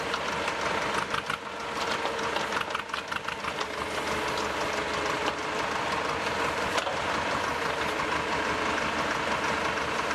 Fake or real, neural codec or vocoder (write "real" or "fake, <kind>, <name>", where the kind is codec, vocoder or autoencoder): real